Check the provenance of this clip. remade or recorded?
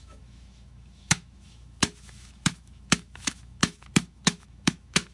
remade